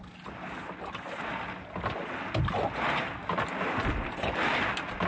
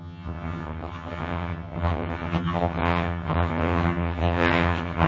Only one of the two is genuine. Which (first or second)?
first